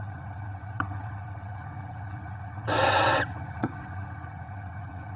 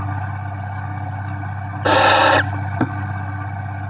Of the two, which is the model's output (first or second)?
first